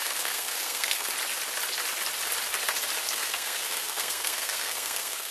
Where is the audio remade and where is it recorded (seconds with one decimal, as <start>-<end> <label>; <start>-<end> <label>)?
0.0-1.1 remade; 1.1-3.1 recorded; 3.1-5.3 remade